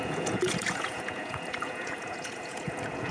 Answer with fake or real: fake